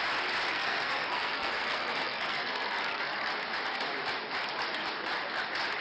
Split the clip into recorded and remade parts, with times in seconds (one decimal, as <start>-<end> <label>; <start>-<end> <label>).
0.0-0.5 recorded; 0.5-3.3 remade; 3.3-5.8 recorded